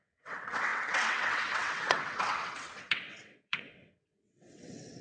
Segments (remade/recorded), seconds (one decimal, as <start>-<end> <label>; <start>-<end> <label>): 0.0-5.0 remade